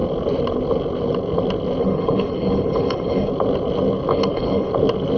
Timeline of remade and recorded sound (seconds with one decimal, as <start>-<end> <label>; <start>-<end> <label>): 0.0-1.8 recorded; 1.8-3.3 remade; 3.3-4.1 recorded; 4.1-4.7 remade; 4.7-5.2 recorded